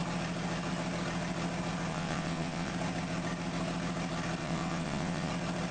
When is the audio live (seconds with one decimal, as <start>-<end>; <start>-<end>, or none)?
0.0-1.9; 2.7-4.4; 5.3-5.7